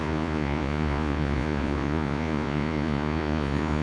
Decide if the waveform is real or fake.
fake